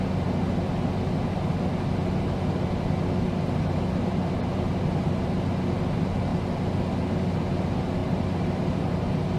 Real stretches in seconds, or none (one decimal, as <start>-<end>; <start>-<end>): 0.0-9.4